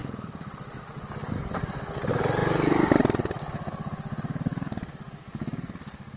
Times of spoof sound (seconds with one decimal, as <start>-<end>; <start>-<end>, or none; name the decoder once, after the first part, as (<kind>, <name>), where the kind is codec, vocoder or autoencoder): 4.5-5.1 (codec, DAC)